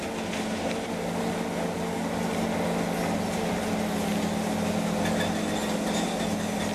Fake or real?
real